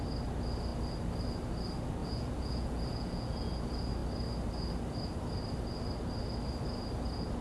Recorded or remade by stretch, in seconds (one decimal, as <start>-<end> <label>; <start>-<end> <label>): 0.0-2.0 recorded; 2.0-3.5 remade; 3.5-7.4 recorded